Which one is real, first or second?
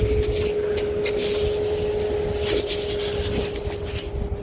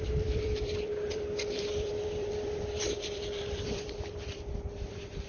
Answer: first